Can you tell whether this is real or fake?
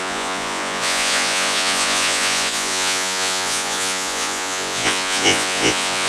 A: fake